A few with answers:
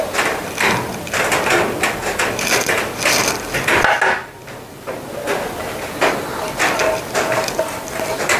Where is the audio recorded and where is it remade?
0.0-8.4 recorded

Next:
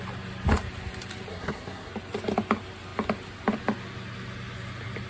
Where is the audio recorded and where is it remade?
0.0-1.3 recorded; 1.3-1.9 remade; 1.9-5.1 recorded